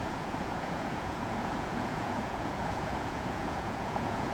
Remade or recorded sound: remade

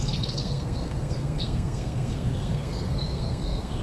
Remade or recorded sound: remade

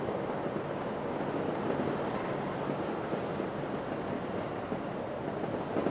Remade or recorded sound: recorded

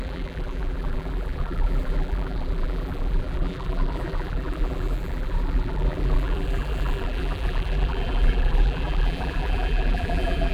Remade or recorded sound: remade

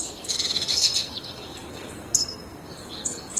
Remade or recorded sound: remade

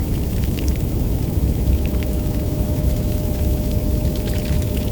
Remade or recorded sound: remade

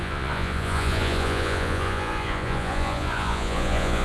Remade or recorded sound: remade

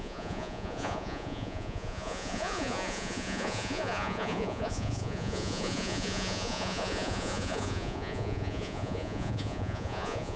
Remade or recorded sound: remade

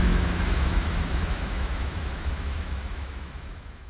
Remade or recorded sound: remade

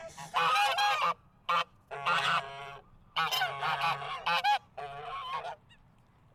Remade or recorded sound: recorded